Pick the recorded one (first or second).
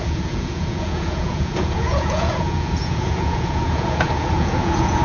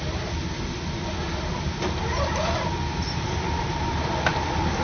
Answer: second